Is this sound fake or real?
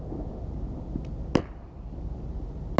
real